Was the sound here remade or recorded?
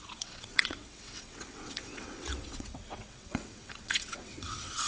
remade